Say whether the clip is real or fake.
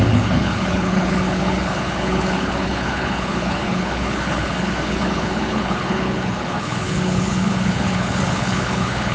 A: fake